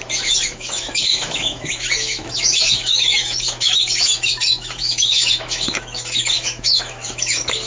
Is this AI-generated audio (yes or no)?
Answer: yes